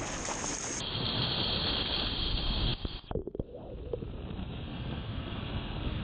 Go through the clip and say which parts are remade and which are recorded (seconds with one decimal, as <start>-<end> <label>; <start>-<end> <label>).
0.0-4.4 recorded; 4.4-6.0 remade